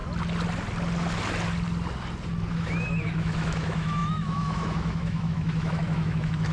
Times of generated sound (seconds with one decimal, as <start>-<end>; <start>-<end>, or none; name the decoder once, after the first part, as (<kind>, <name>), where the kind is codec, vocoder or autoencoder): 2.5-6.5 (autoencoder, DAC-VAE)